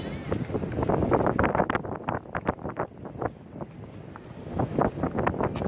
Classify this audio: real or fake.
real